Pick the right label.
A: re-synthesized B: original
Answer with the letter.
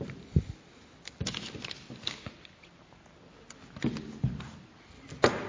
B